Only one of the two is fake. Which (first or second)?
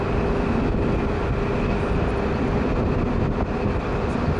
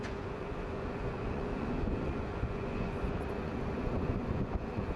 second